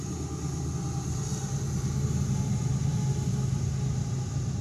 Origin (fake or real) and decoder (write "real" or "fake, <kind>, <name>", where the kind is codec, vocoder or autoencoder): real